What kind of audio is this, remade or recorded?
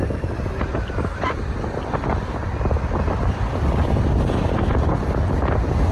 recorded